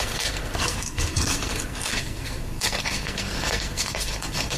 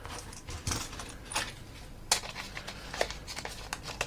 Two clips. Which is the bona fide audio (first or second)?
second